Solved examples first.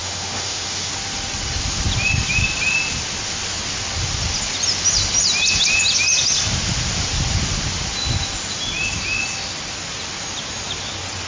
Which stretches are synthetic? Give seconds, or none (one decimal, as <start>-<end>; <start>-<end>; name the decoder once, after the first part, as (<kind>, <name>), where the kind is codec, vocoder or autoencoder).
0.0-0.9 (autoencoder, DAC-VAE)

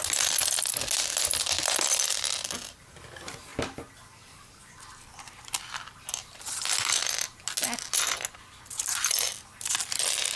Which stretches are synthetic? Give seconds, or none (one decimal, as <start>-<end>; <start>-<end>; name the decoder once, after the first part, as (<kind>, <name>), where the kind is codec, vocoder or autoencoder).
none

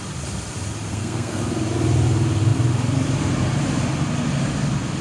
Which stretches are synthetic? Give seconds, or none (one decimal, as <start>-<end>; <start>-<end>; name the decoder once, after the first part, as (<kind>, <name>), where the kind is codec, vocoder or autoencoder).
0.9-1.4 (codec, SNAC)